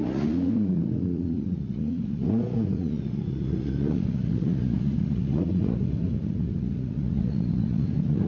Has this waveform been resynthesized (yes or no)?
yes